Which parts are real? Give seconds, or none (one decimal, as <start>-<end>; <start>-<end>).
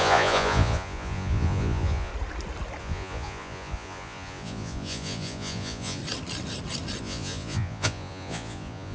2.1-2.8; 6.0-7.0